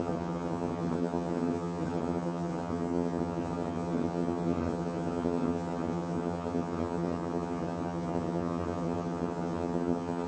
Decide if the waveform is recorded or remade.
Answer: remade